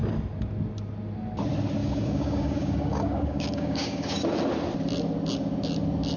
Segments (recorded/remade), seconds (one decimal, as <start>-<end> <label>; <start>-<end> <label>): 0.0-1.8 recorded; 1.8-4.2 remade; 4.2-6.2 recorded